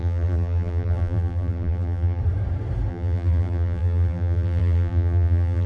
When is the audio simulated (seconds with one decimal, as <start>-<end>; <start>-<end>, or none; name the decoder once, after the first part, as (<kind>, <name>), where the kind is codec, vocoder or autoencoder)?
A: 0.0-2.2 (vocoder, BigVGAN v2); 2.9-5.7